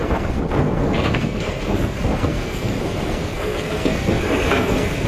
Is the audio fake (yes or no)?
yes